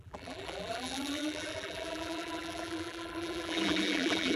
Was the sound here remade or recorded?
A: remade